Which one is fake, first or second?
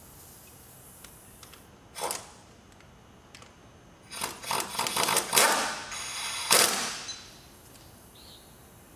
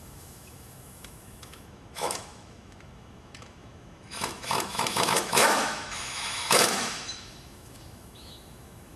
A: second